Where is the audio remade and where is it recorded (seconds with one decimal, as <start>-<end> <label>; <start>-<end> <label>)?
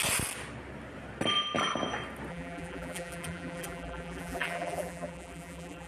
0.0-2.3 recorded; 2.3-5.9 remade